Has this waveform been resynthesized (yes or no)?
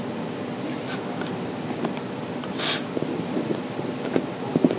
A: no